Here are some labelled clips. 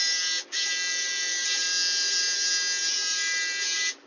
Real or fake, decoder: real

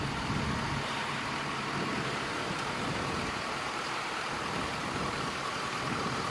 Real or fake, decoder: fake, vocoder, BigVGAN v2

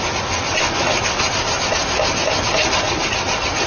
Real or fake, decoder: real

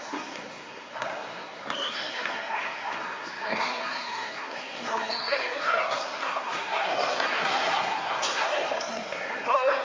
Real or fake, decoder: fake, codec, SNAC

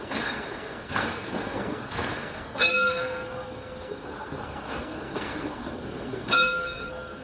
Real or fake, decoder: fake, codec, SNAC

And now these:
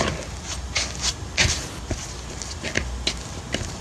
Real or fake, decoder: real